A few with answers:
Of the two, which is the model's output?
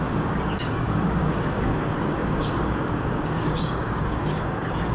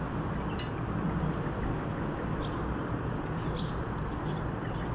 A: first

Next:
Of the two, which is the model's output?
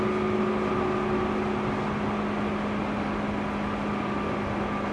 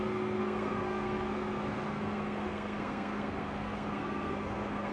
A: second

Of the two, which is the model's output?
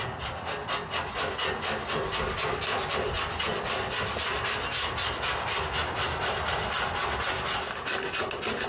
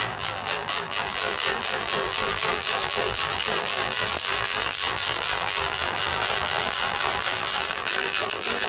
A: second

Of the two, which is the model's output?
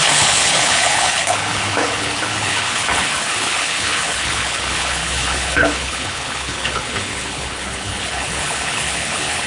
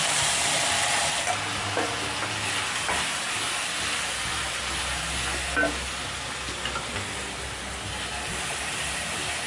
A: first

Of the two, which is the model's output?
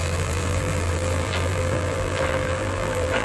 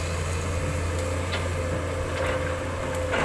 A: first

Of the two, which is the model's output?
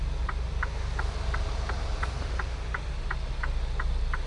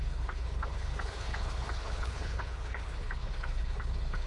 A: second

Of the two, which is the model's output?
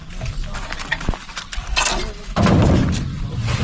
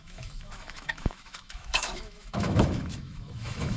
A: second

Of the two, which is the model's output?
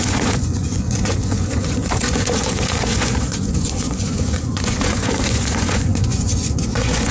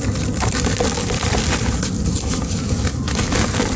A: first